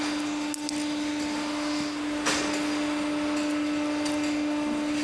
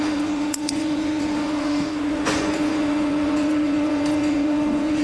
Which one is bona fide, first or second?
first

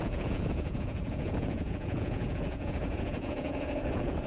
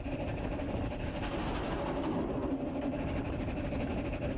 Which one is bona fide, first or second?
second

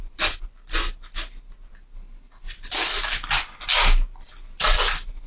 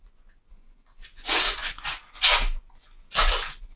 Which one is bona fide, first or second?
first